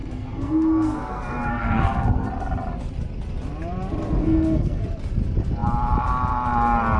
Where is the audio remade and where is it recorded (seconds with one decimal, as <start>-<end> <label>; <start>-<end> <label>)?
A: 0.0-2.3 remade; 2.3-4.2 recorded; 4.2-4.8 remade; 4.8-7.0 recorded